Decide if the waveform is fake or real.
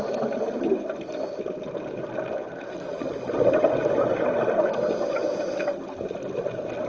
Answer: real